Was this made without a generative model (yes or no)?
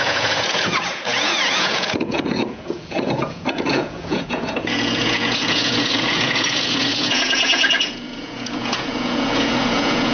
no